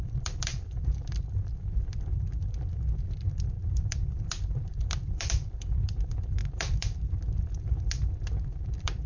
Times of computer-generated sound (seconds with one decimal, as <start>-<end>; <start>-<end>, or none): 0.0-9.1